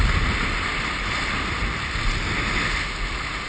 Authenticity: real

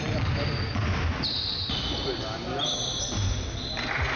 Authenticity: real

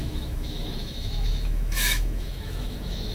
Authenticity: fake